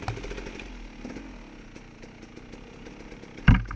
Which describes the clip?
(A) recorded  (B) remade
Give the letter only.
A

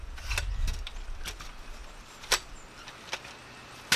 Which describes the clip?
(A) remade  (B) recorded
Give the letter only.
B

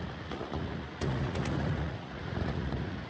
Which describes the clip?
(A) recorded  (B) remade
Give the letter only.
B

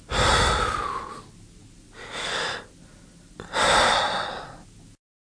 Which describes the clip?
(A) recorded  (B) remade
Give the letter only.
A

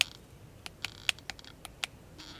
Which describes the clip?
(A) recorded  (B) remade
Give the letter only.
A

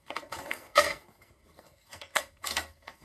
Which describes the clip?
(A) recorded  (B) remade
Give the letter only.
B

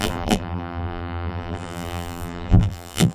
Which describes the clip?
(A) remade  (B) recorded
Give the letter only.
A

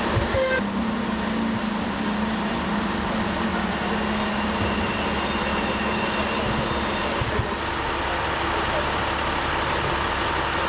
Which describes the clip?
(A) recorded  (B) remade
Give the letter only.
A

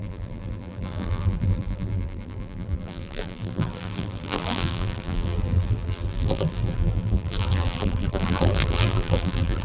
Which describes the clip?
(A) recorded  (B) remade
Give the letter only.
B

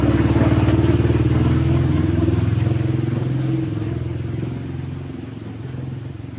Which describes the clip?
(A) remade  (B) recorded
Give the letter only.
B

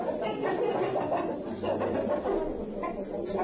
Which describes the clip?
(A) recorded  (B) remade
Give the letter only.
A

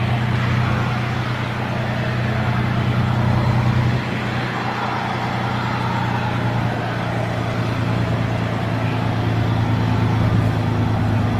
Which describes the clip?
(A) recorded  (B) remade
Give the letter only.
A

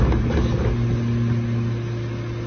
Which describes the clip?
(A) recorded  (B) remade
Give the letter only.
A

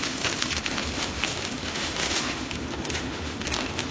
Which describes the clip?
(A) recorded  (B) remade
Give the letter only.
B